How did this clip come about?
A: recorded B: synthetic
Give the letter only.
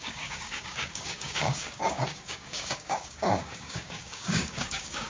B